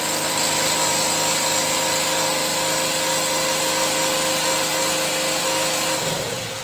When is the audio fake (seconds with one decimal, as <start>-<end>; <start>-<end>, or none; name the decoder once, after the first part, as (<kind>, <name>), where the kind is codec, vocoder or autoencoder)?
none